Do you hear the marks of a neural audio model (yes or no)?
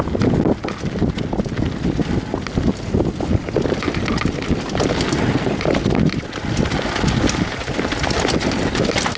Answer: no